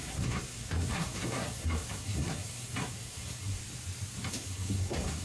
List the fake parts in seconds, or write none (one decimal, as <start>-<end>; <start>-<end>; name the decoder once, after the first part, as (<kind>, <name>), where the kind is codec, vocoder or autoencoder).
0.0-3.6 (codec, SNAC); 4.3-5.2